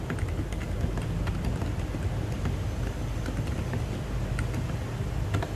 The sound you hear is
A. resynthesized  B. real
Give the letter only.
B